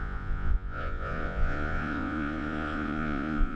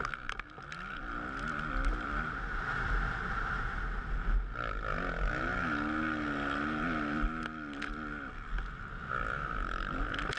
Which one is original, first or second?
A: second